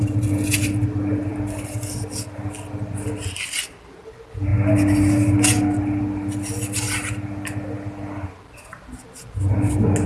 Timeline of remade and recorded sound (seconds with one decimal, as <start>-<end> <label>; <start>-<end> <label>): 0.0-10.1 recorded